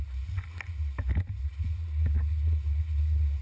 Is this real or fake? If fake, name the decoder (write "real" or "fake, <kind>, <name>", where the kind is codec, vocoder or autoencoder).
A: real